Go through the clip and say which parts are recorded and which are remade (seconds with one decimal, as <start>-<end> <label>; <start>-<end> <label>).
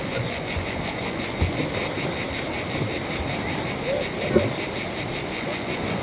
0.0-1.6 remade; 1.6-5.2 recorded; 5.2-6.0 remade